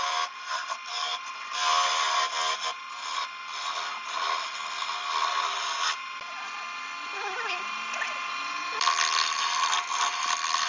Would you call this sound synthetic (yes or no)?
no